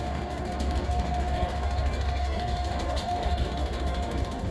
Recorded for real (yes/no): no